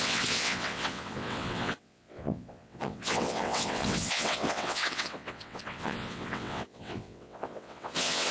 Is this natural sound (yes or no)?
no